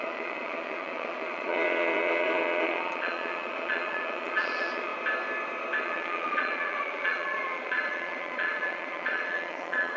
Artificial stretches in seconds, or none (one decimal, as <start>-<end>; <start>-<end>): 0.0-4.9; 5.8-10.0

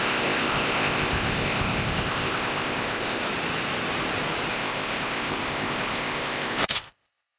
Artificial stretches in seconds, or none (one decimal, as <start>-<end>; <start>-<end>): 0.0-3.2; 4.5-7.4

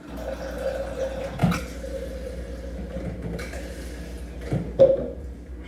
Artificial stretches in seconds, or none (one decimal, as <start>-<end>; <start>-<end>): none

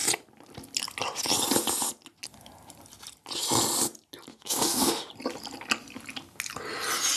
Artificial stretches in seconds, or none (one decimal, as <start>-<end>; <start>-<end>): 4.3-5.1